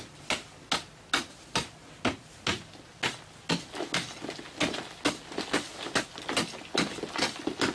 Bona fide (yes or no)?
yes